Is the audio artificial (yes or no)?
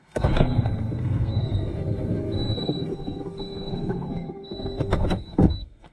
yes